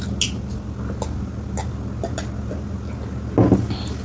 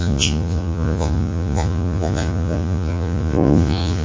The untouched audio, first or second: first